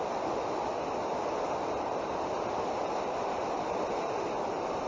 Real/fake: real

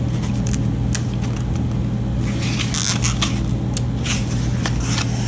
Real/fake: real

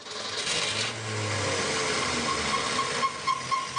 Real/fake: real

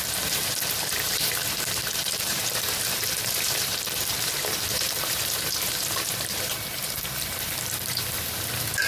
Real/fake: fake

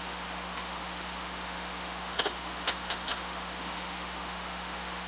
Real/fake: fake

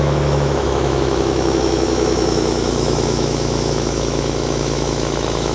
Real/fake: fake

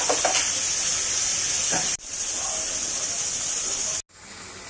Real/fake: real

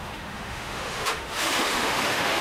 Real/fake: fake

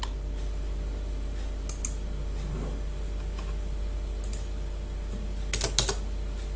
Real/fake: real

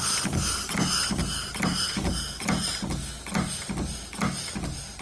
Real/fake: real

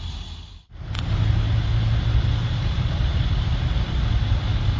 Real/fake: real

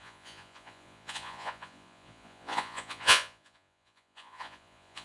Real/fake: fake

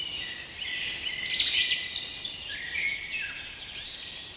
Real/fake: fake